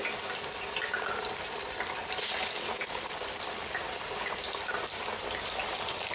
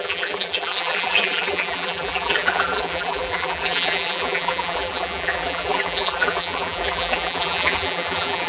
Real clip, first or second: first